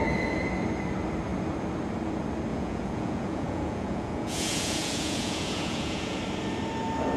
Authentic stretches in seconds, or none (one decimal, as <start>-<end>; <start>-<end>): 0.0-2.5; 6.2-7.2